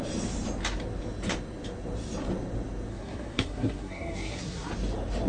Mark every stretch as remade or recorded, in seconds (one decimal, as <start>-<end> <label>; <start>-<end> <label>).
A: 0.0-2.9 recorded; 2.9-4.7 remade; 4.7-5.3 recorded